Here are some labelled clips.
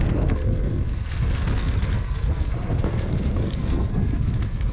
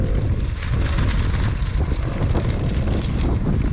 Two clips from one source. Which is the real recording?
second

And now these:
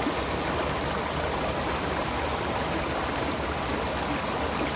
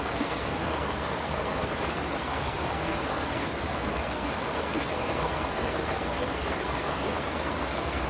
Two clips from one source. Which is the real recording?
first